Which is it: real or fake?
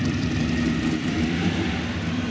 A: fake